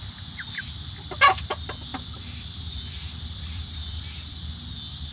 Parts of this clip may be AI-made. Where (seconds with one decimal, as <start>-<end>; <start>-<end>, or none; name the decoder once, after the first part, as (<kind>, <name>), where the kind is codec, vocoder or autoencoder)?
1.9-4.5 (vocoder, BigVGAN v2)